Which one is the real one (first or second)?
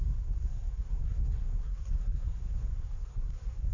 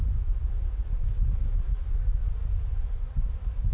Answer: second